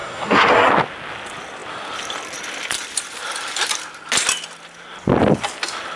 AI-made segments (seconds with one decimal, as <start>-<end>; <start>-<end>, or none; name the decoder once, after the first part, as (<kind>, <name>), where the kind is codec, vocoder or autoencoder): 0.0-0.7 (codec, SNAC)

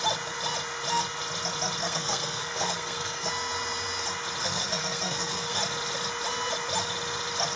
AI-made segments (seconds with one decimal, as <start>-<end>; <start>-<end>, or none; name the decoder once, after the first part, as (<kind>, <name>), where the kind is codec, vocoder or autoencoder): 1.8-3.3 (codec, SNAC); 4.4-5.6